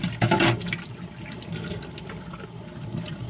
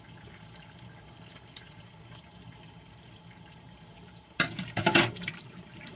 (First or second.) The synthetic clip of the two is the second